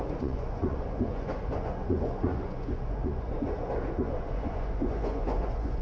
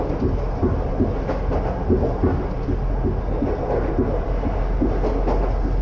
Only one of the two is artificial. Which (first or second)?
first